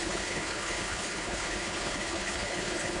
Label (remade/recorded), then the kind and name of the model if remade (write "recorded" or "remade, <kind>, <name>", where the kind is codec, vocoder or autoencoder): remade, codec, HILCodec